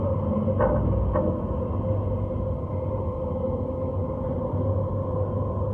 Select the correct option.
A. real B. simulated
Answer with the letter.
A